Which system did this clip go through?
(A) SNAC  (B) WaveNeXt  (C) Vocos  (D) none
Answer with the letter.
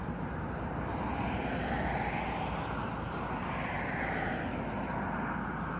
D